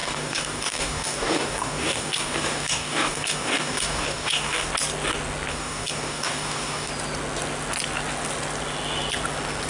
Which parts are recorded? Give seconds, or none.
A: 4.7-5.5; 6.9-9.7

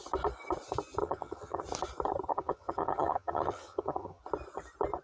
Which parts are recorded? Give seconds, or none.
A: 0.0-1.0; 1.6-2.3; 4.2-5.0

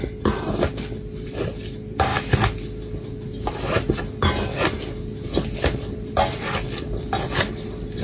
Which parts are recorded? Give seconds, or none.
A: 0.0-8.0

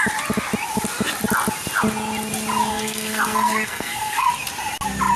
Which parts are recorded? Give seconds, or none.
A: 0.0-2.7; 4.3-5.2

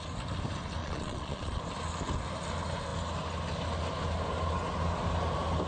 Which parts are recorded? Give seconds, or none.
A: 0.0-0.8; 1.6-5.7

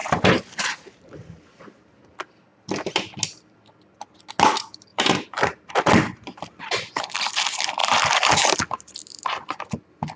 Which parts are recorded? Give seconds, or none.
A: 1.5-4.9; 5.7-10.2